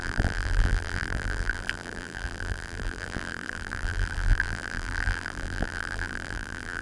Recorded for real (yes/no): no